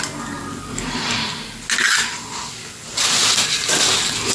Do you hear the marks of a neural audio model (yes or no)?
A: no